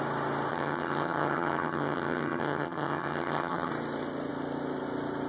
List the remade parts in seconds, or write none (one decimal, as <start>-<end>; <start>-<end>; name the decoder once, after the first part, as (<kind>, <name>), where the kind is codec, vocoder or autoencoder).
0.5-3.7 (vocoder, HiFi-GAN)